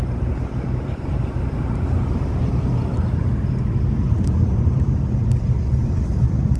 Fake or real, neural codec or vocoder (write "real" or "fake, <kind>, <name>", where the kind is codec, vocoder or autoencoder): real